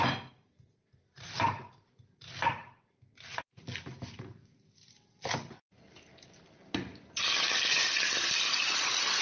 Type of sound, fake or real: real